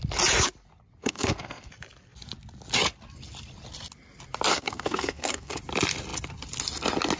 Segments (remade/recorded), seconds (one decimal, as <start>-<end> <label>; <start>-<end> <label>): 0.0-1.0 recorded; 1.0-1.7 remade; 1.7-4.5 recorded; 4.5-5.6 remade; 5.6-7.2 recorded